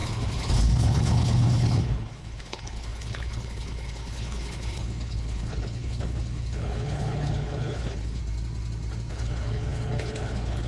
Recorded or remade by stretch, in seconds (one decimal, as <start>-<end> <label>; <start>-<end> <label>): 0.0-8.2 remade; 8.2-9.1 recorded; 9.1-10.7 remade